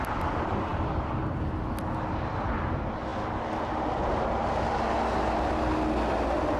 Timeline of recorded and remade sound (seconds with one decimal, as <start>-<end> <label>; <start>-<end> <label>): 0.0-6.6 recorded